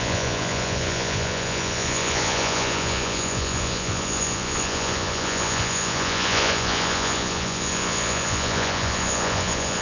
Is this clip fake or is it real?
fake